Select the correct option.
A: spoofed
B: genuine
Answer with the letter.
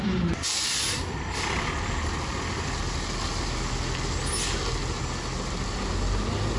B